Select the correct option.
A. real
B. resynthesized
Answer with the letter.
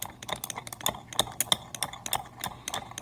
A